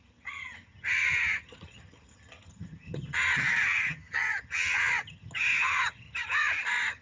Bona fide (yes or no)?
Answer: no